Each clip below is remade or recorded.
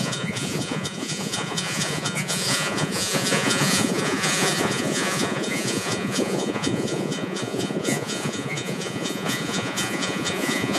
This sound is remade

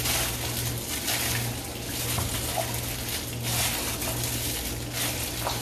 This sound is recorded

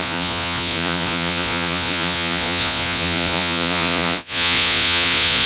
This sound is remade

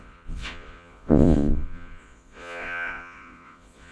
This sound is remade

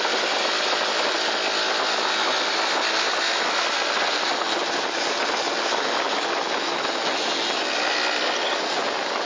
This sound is recorded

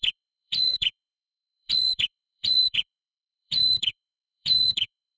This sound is remade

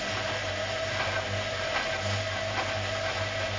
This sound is recorded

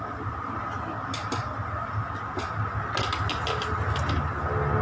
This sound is recorded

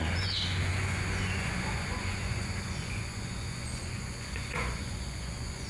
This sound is remade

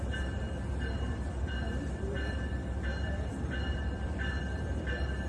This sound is recorded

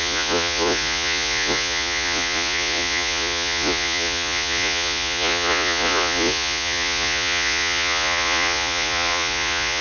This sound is remade